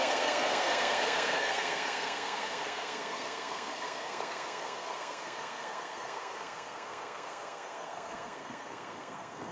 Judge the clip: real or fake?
fake